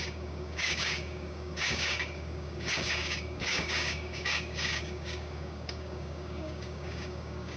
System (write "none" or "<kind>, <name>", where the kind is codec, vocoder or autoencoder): codec, DAC